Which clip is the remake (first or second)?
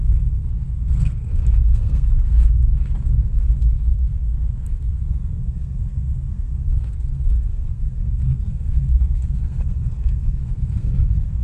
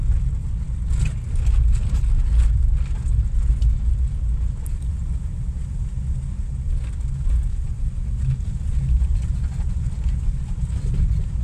first